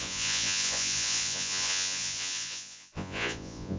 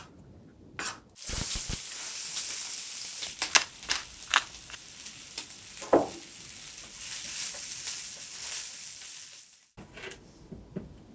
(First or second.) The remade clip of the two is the first